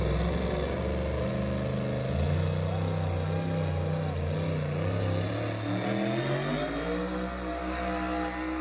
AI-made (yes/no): no